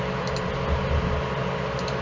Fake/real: real